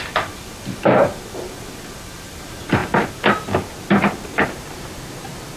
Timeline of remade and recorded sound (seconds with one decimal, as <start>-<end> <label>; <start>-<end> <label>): 0.0-5.6 recorded